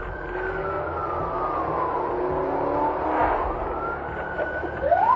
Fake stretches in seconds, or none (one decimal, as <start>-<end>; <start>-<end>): none